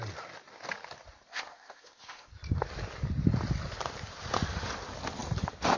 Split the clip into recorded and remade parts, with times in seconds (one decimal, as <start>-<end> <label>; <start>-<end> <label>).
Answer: 0.0-1.3 recorded; 1.3-2.3 remade; 2.3-5.8 recorded